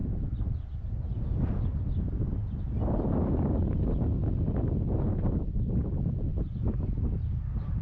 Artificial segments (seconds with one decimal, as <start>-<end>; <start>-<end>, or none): none